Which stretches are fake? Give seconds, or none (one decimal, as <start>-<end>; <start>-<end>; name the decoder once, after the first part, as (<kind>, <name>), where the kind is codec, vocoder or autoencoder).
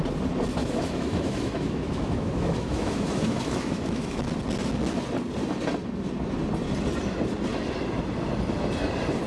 0.6-4.3 (autoencoder, DAC-VAE)